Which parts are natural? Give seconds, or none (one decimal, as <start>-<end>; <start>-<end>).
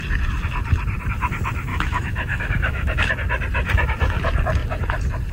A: 0.0-1.7; 3.1-5.3